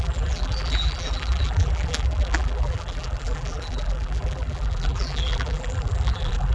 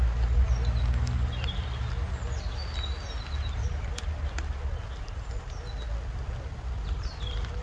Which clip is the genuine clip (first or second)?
second